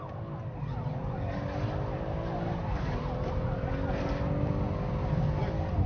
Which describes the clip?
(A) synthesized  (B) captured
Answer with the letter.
B